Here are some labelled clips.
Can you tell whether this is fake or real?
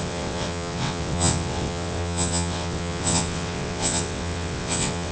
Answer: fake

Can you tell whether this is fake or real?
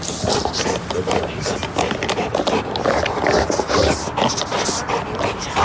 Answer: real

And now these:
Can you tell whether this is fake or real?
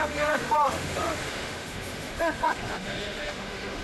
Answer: fake